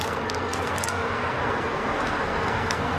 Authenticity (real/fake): fake